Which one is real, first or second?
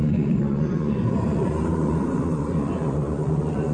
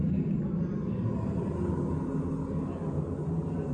second